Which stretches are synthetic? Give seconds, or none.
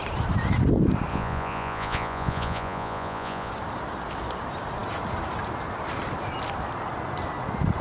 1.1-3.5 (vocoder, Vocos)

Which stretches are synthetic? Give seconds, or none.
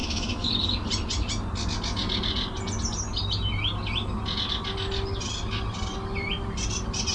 0.0-0.5 (autoencoder, DAC-VAE)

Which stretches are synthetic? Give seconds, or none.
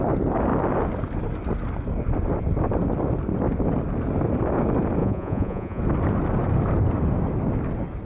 5.0-5.8 (vocoder, Vocos)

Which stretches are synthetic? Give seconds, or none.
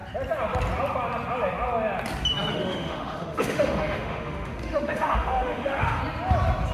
2.5-6.0 (autoencoder, DAC-VAE)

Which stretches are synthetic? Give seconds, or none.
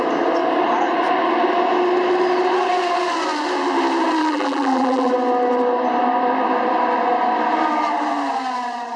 4.2-5.1 (vocoder, BigVGAN v2)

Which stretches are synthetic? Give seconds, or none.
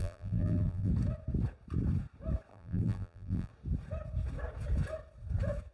0.0-0.9 (vocoder, BigVGAN v2); 2.5-3.5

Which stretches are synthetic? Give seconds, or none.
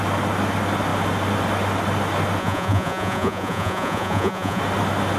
2.4-4.6 (vocoder, Vocos)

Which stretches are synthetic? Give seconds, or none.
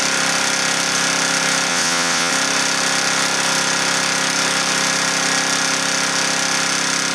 1.7-2.3 (vocoder, WaveNeXt)